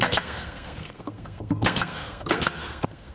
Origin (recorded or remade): remade